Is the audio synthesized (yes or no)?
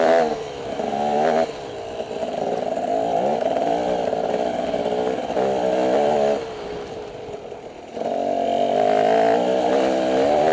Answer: no